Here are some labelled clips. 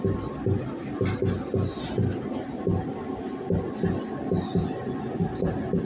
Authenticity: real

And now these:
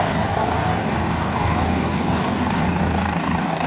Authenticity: fake